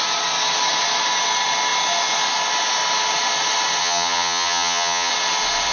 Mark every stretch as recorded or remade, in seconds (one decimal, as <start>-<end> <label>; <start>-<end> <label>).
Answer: 0.0-3.8 recorded; 3.8-5.1 remade; 5.1-5.7 recorded